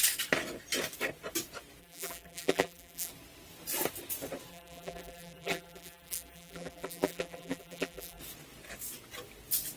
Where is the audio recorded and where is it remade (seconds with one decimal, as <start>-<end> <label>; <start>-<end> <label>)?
0.0-1.8 recorded; 1.8-3.1 remade; 3.1-4.5 recorded; 4.5-8.2 remade; 8.2-9.8 recorded